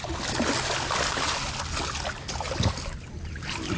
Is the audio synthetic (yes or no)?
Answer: no